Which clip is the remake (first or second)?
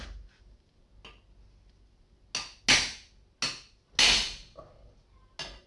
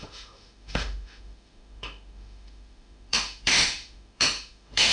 second